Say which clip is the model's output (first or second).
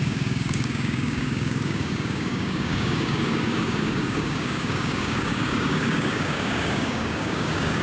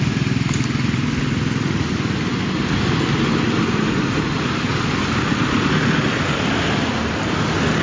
first